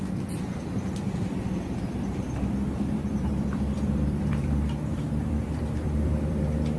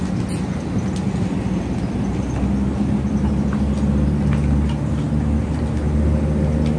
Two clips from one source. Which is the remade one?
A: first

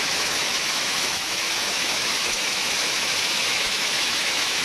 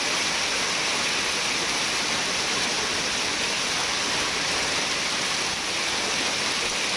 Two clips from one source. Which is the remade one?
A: first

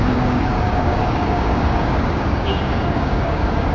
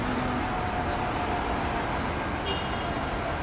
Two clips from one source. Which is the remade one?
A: first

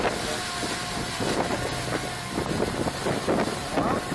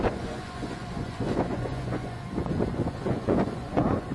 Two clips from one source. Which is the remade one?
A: second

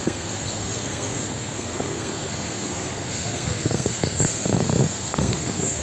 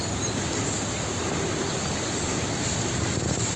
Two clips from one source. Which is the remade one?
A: first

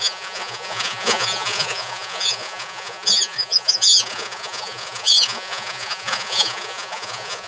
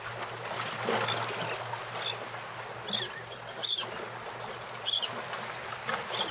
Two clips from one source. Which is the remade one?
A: first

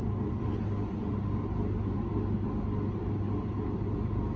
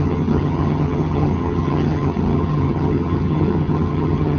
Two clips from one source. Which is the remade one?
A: second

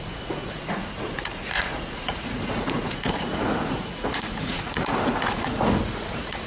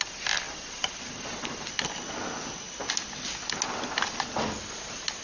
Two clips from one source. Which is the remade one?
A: first